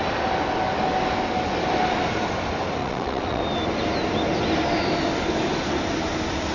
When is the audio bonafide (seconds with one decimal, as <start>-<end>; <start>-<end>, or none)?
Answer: 0.0-2.8; 3.4-6.5